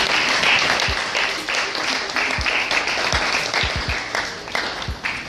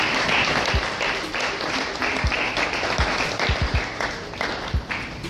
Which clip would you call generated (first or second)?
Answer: second